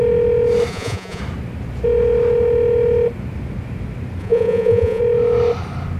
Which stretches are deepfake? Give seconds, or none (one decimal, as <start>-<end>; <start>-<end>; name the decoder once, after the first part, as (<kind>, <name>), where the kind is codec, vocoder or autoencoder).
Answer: 0.7-1.2 (vocoder, Vocos); 4.2-5.0